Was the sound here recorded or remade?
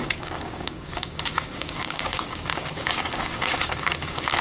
remade